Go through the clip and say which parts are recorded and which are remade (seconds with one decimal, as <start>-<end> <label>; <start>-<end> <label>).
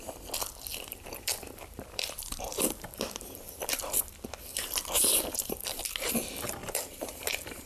0.0-0.7 recorded; 0.7-3.8 remade; 3.8-4.5 recorded; 4.5-5.8 remade; 5.8-6.6 recorded; 6.6-7.7 remade